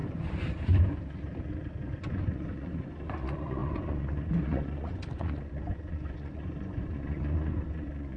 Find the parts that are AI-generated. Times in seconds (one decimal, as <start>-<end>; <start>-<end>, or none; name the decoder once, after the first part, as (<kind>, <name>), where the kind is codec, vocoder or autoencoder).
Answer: 1.9-8.2 (vocoder, Vocos)